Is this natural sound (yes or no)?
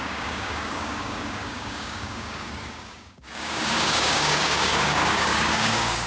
no